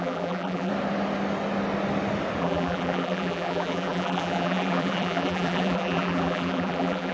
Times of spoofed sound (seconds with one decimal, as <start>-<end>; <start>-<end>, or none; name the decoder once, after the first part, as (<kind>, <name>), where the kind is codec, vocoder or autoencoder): 0.0-0.7 (vocoder, BigVGAN v2); 2.4-7.1